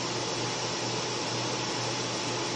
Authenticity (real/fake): real